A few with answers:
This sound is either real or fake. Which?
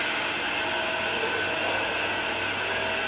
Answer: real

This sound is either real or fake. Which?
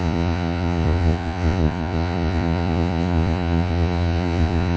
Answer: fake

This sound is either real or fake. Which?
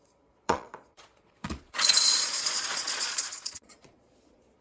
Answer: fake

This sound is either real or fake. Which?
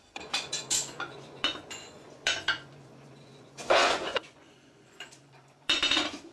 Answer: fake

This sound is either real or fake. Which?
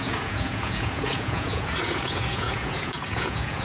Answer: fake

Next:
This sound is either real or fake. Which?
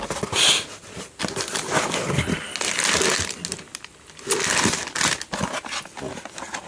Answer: real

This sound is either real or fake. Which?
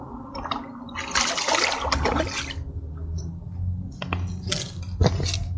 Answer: real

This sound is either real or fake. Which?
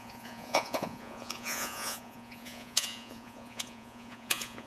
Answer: fake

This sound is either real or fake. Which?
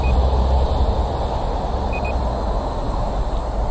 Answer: real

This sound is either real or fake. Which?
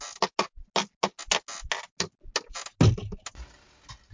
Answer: real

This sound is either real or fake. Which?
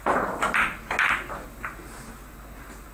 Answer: real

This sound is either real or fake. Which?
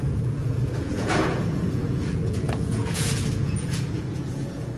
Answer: fake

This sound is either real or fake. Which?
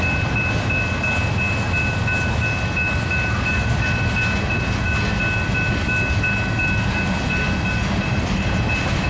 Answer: real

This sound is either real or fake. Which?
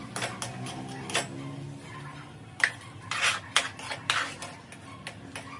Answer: real